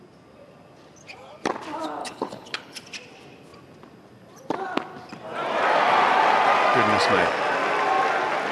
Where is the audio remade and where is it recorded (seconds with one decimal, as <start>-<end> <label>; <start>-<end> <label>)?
0.0-2.0 recorded; 2.0-2.8 remade; 2.8-8.5 recorded

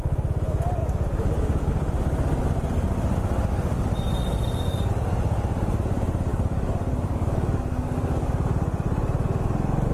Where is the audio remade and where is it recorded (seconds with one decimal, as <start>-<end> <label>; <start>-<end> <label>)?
0.0-0.8 recorded; 0.8-1.7 remade; 1.7-6.3 recorded; 6.3-8.3 remade; 8.3-9.9 recorded

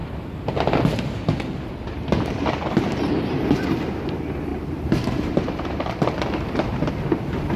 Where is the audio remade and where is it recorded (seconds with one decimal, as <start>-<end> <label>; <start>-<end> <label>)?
0.0-0.5 remade; 0.5-4.5 recorded; 4.5-6.9 remade; 6.9-7.6 recorded

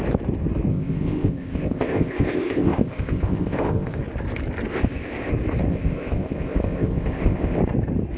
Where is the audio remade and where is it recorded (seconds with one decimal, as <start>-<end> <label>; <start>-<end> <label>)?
0.0-0.7 recorded; 0.7-4.0 remade; 4.0-4.7 recorded; 4.7-5.3 remade; 5.3-5.7 recorded; 5.7-7.6 remade; 7.6-8.2 recorded

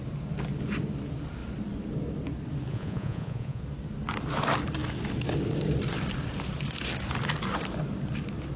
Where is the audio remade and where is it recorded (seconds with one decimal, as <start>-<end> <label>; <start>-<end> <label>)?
0.0-2.7 recorded; 2.7-3.6 remade; 3.6-8.6 recorded

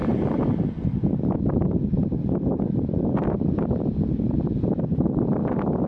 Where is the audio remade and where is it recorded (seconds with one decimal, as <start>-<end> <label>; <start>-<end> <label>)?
0.0-5.9 recorded